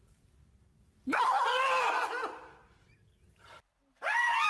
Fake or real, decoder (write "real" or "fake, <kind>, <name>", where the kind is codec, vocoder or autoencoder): real